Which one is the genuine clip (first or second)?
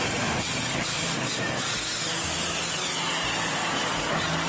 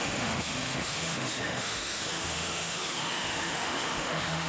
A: first